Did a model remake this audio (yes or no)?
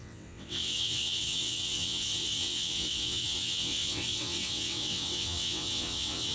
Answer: yes